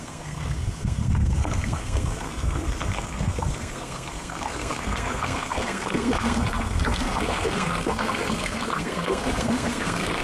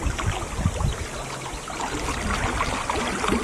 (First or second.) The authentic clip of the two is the second